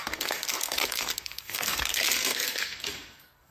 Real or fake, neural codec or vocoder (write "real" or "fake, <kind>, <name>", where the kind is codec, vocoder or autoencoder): fake, codec, SNAC